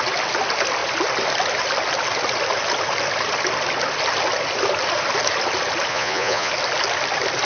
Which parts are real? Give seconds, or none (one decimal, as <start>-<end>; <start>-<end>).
0.0-5.9; 6.5-7.5